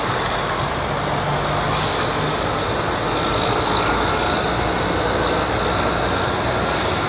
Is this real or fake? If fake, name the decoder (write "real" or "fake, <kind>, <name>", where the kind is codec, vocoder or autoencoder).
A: real